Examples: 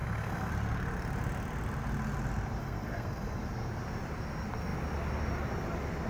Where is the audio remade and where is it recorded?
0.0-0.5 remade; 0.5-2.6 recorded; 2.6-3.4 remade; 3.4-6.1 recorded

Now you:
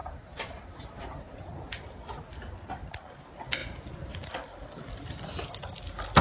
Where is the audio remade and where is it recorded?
0.0-1.2 remade; 1.2-6.2 recorded

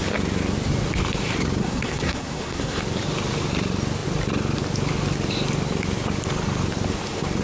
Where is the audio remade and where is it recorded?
0.0-1.6 recorded; 1.6-2.8 remade; 2.8-7.4 recorded

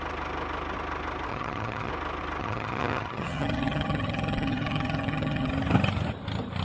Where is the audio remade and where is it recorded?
0.0-1.3 recorded; 1.3-1.9 remade; 1.9-2.4 recorded; 2.4-5.5 remade; 5.5-6.6 recorded